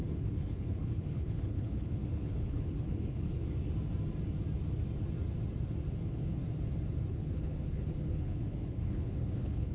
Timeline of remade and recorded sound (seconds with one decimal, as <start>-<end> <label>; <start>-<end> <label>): 0.0-3.4 remade; 3.4-6.0 recorded; 6.0-6.4 remade; 6.4-7.1 recorded; 7.1-9.7 remade